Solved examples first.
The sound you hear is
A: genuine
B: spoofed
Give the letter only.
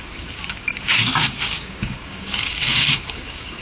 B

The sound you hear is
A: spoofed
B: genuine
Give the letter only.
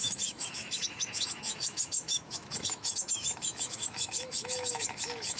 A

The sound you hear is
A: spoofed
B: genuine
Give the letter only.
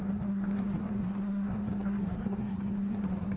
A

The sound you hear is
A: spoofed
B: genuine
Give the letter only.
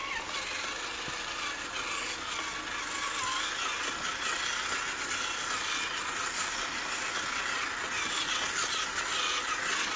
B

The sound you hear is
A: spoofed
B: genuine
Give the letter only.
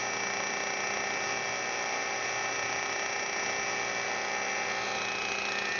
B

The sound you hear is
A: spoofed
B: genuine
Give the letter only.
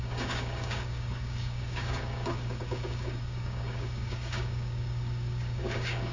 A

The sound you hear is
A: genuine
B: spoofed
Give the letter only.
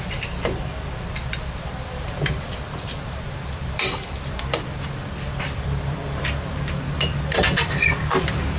B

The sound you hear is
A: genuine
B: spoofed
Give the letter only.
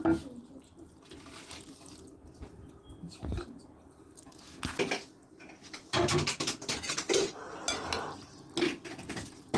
A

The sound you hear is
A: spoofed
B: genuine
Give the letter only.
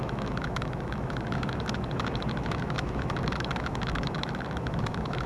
A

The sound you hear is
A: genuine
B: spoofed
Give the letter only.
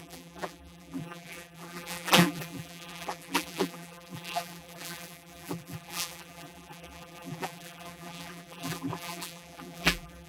B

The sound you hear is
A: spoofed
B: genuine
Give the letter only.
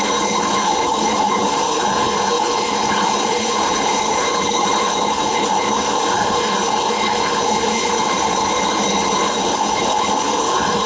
A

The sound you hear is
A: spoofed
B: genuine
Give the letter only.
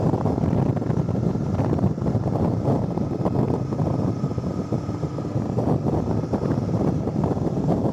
B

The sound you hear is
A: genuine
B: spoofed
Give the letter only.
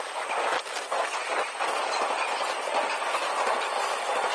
A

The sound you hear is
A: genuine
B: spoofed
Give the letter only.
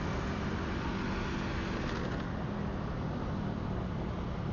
A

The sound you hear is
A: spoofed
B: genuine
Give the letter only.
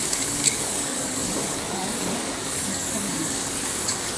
A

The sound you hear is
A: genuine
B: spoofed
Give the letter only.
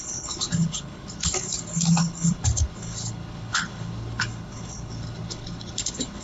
B